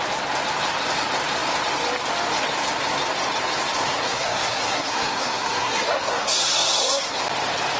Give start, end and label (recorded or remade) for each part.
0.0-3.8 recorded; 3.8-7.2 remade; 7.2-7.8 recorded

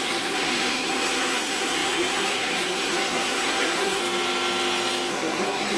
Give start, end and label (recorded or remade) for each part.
0.0-4.0 remade; 4.0-5.1 recorded; 5.1-5.8 remade

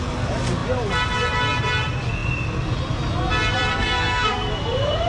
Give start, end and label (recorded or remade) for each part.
0.0-3.7 recorded; 3.7-4.5 remade; 4.5-5.1 recorded

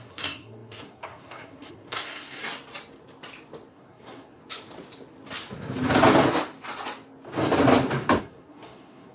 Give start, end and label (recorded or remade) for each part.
0.0-2.4 remade; 2.4-3.7 recorded; 3.7-4.4 remade; 4.4-8.2 recorded; 8.2-9.1 remade

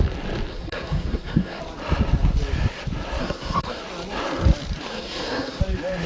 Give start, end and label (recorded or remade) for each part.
0.0-0.5 recorded; 0.5-1.6 remade; 1.6-3.2 recorded; 3.2-3.8 remade; 3.8-4.9 recorded; 4.9-5.6 remade; 5.6-6.1 recorded

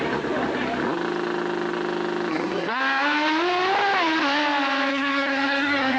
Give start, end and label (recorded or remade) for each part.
0.0-2.3 recorded; 2.3-2.8 remade; 2.8-4.9 recorded; 4.9-6.0 remade

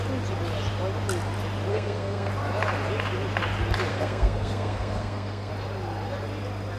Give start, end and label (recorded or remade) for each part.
0.0-1.7 recorded; 1.7-2.3 remade; 2.3-3.9 recorded; 3.9-5.5 remade; 5.5-6.8 recorded

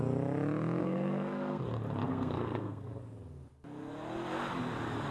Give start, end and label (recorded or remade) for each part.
0.0-0.8 recorded; 0.8-1.6 remade; 1.6-2.1 recorded; 2.1-2.9 remade; 2.9-5.1 recorded